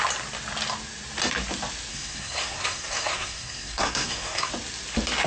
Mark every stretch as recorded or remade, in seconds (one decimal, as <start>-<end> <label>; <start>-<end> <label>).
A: 0.0-1.9 recorded; 1.9-4.5 remade; 4.5-5.3 recorded